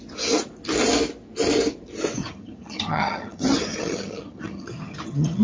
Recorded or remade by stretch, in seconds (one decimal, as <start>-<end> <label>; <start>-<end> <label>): 0.0-2.2 recorded; 2.2-5.4 remade